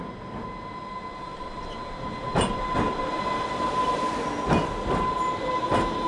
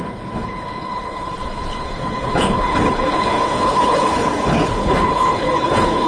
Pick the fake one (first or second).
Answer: second